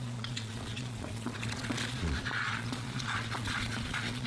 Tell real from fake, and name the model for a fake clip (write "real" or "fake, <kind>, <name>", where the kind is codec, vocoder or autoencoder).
fake, vocoder, Vocos